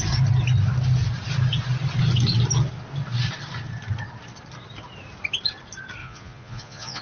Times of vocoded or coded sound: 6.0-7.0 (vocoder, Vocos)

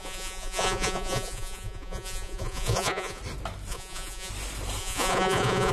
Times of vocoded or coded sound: 0.0-3.2 (vocoder, Vocos); 3.7-4.3; 4.8-5.7